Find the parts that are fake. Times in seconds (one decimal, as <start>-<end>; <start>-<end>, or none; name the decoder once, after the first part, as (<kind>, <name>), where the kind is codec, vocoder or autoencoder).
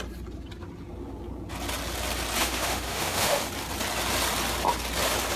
2.4-3.4 (autoencoder, DAC-VAE)